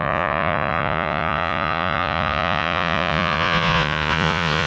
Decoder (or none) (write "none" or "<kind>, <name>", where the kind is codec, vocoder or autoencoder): vocoder, Vocos